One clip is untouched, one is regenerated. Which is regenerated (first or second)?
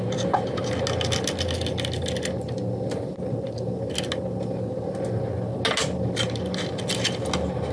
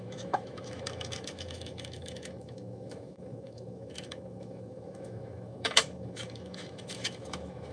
second